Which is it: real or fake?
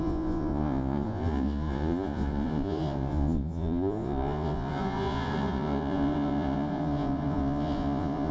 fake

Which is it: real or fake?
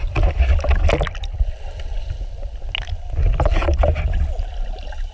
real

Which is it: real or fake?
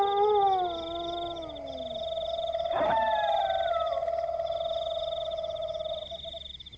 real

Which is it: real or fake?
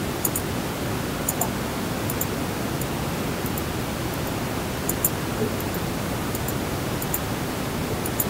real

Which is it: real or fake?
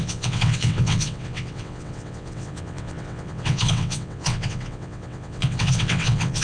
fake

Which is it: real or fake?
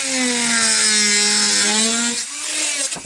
real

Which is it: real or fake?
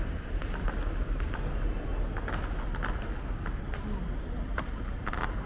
real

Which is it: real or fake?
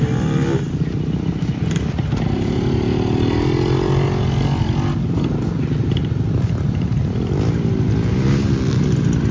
real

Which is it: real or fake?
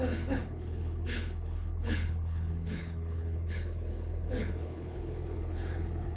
fake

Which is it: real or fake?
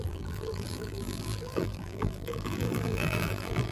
fake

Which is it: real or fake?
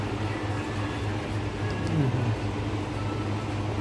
real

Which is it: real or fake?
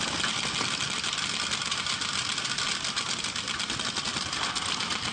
real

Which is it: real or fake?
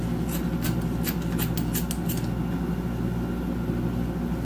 real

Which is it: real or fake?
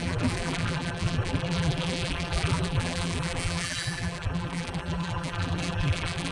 fake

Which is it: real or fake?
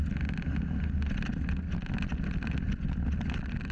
real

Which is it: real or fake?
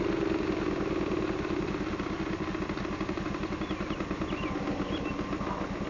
real